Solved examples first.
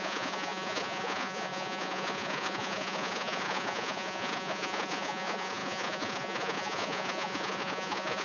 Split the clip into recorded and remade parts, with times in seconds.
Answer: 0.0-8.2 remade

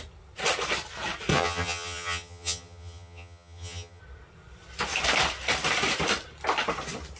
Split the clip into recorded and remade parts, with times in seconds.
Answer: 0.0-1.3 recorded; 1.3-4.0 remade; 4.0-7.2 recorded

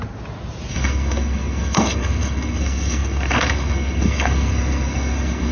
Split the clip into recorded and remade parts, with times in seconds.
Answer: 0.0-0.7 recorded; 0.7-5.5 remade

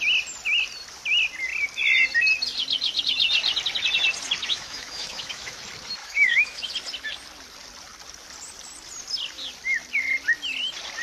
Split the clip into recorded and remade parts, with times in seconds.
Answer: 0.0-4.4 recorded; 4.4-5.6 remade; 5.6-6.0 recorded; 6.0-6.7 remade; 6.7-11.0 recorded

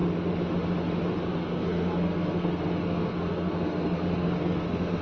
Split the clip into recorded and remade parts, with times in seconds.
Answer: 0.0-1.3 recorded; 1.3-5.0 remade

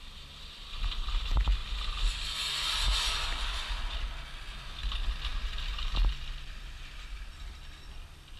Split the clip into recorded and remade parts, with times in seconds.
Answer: 0.0-5.3 recorded; 5.3-6.6 remade; 6.6-8.4 recorded

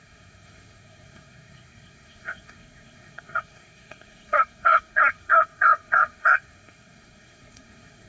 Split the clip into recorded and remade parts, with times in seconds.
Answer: 0.0-8.1 remade